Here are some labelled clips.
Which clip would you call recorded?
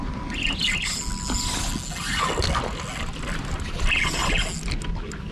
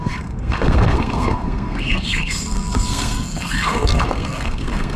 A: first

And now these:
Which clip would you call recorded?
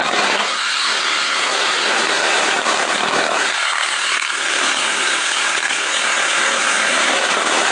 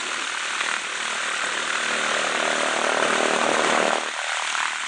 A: second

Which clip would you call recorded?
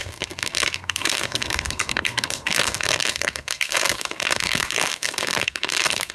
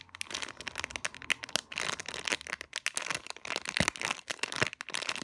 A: second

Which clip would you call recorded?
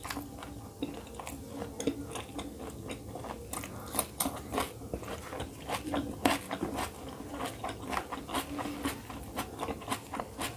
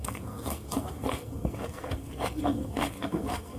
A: first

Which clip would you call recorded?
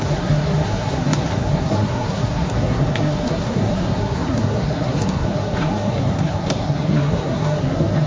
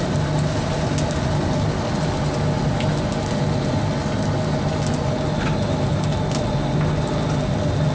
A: second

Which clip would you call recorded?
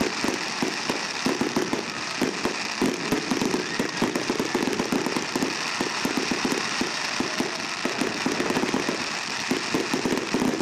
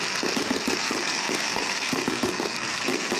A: first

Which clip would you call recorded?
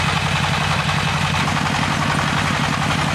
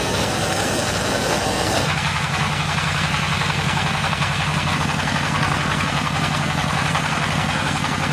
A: first